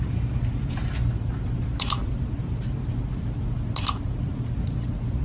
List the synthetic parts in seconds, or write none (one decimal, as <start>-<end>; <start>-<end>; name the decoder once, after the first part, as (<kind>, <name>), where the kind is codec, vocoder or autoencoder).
none